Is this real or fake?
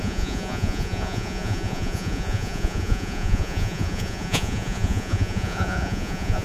fake